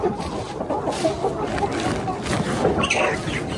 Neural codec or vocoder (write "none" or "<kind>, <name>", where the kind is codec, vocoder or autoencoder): none